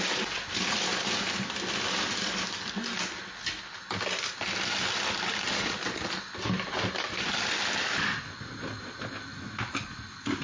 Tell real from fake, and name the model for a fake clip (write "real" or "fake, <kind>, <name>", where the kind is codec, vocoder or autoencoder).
real